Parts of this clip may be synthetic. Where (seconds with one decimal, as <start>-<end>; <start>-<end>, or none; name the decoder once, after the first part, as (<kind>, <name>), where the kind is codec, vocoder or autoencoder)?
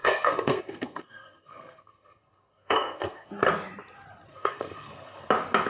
0.0-3.3 (codec, SNAC); 4.3-5.3